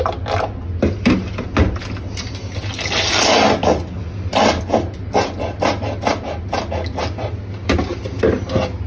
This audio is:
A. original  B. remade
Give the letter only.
A